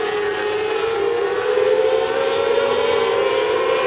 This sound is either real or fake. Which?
real